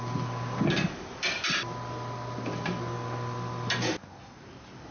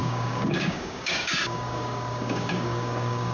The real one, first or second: first